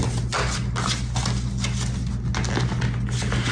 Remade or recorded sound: recorded